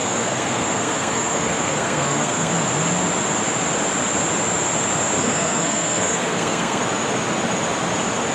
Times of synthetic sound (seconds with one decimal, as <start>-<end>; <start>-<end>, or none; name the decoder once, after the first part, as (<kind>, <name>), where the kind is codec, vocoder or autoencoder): 0.0-2.5 (codec, SNAC); 5.2-6.8